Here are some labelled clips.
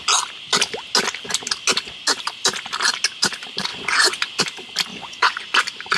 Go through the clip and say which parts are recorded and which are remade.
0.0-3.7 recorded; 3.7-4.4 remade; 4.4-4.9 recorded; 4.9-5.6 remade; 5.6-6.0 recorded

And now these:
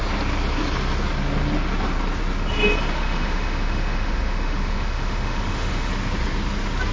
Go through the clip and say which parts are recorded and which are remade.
0.0-2.9 recorded; 2.9-5.9 remade; 5.9-6.9 recorded

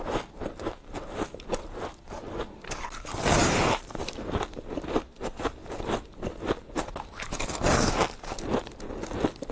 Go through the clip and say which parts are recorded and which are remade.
0.0-3.4 recorded; 3.4-4.0 remade; 4.0-9.5 recorded